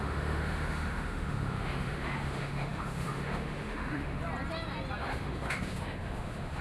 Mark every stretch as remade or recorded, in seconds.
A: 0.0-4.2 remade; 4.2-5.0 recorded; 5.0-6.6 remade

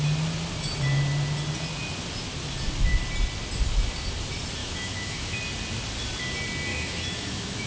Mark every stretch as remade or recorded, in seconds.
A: 0.0-4.6 recorded; 4.6-5.4 remade; 5.4-6.7 recorded; 6.7-7.7 remade